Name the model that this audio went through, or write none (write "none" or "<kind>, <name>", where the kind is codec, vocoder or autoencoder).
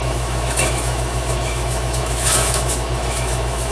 autoencoder, DAC-VAE